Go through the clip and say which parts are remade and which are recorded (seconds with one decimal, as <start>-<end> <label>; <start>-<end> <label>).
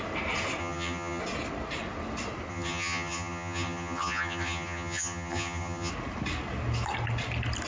0.0-0.6 recorded; 0.6-1.2 remade; 1.2-2.5 recorded; 2.5-5.9 remade; 5.9-7.7 recorded